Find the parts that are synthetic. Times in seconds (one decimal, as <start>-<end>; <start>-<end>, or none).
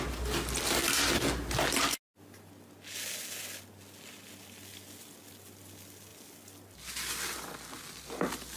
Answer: none